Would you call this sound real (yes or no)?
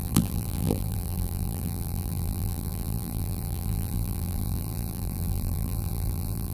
no